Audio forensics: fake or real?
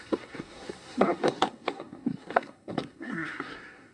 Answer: fake